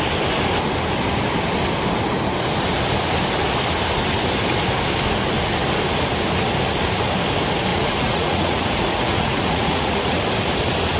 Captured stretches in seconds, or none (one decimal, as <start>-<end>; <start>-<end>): 0.0-7.7; 10.2-11.0